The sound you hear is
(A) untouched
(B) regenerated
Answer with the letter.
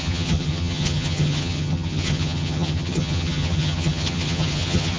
B